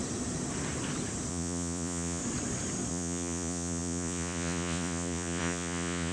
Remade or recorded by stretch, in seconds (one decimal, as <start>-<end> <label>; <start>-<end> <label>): 0.0-1.3 recorded; 1.3-2.2 remade; 2.2-2.9 recorded; 2.9-6.1 remade